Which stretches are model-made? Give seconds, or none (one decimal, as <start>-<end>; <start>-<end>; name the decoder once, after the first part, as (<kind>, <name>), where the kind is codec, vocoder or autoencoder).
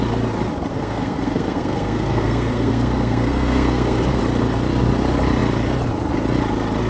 0.7-4.2 (codec, SNAC)